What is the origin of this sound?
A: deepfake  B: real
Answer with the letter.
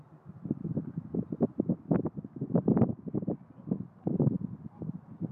B